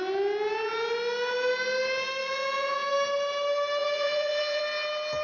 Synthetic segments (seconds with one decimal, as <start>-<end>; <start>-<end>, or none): 2.2-2.9; 3.8-4.6